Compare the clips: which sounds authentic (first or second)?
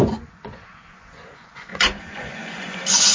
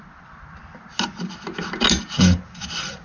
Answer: second